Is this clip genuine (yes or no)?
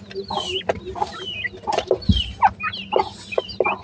yes